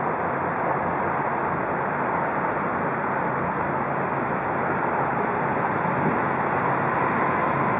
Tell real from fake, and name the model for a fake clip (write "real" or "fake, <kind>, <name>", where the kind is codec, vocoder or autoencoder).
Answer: real